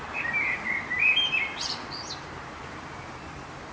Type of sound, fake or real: fake